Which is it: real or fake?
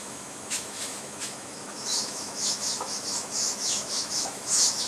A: fake